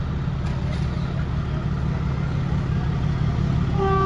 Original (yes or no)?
yes